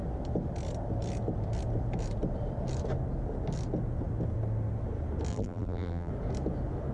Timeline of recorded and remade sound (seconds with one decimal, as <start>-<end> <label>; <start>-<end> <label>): 0.0-5.3 recorded; 5.3-6.1 remade; 6.1-6.9 recorded